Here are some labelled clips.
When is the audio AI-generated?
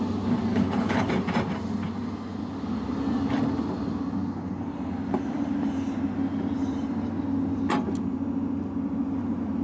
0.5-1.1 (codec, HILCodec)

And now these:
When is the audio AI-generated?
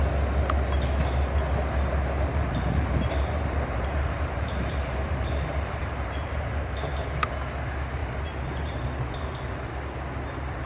2.3-6.9 (vocoder, BigVGAN v2); 8.0-9.7